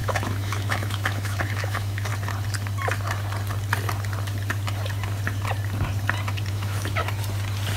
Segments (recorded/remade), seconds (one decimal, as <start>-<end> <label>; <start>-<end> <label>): 0.0-2.1 remade; 2.1-6.5 recorded; 6.5-7.0 remade; 7.0-7.8 recorded